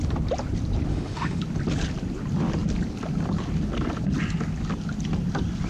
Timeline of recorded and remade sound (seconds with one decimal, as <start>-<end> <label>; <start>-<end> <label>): 0.0-0.9 recorded; 0.9-1.4 remade; 1.4-5.7 recorded